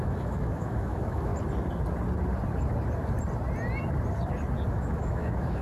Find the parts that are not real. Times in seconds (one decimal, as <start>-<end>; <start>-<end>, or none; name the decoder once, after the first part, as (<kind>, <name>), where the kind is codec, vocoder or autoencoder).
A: 0.0-1.3 (autoencoder, DAC-VAE); 4.7-5.6